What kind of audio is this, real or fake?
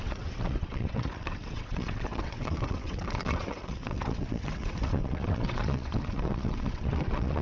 fake